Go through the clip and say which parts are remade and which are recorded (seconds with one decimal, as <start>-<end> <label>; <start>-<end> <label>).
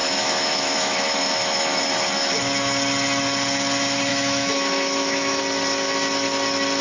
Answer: 0.0-1.8 remade; 1.8-4.1 recorded; 4.1-5.4 remade; 5.4-6.8 recorded